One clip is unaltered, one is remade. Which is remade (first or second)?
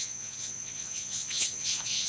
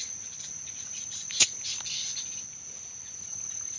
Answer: first